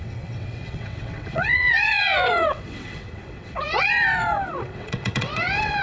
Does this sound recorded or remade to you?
remade